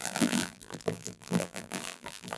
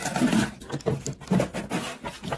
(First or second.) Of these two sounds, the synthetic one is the first